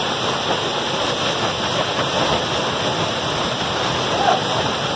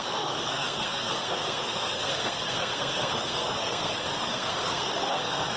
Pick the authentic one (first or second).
first